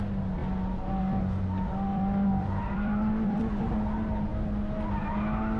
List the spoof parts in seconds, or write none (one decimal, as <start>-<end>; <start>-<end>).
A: 1.9-3.4